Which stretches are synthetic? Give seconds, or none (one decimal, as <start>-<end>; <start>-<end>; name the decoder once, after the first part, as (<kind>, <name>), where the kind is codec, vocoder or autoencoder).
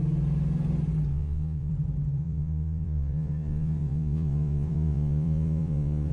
1.1-1.7 (vocoder, Vocos); 2.2-6.1